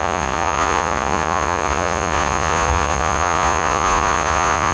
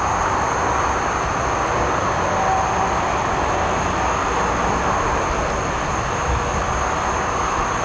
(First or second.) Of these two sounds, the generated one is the first